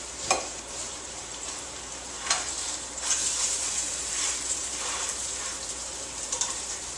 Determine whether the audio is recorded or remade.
remade